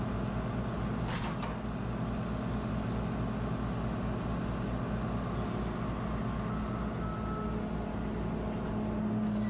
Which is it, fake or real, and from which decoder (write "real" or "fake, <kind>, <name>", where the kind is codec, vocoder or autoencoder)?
real